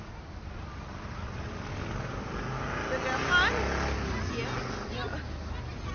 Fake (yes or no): no